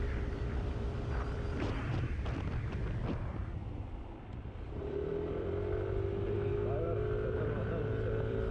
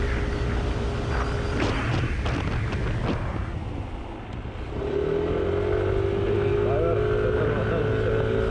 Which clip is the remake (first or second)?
first